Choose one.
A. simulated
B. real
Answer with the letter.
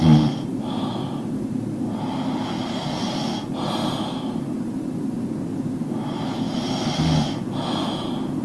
B